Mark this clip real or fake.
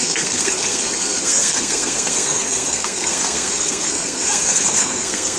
fake